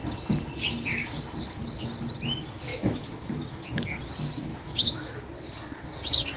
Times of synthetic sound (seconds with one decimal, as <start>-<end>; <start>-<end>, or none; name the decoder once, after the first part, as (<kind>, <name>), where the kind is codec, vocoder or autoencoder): 2.7-4.0 (autoencoder, DAC-VAE); 4.5-5.2